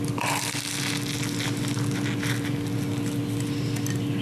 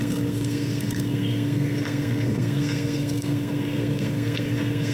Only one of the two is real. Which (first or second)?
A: first